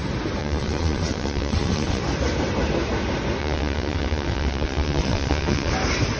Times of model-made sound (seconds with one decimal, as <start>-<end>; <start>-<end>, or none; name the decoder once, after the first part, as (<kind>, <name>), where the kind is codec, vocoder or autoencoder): 0.4-2.0 (vocoder, WaveNeXt); 3.4-5.7